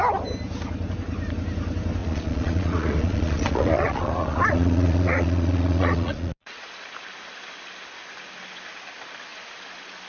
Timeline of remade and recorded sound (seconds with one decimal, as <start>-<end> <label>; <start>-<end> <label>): 0.0-2.0 recorded; 2.0-6.7 remade; 6.7-10.1 recorded